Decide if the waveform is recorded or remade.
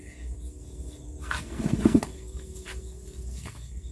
remade